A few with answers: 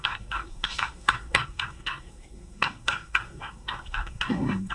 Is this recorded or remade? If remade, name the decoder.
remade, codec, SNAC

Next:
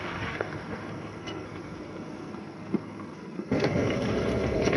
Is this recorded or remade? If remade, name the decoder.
remade, codec, SNAC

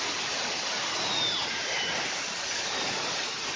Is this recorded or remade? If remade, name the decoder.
recorded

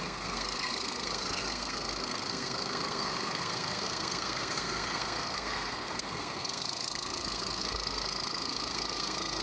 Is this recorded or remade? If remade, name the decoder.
remade, codec, SNAC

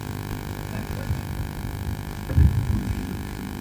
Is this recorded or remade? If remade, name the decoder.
recorded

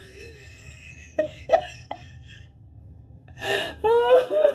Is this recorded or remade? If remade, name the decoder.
remade, codec, SNAC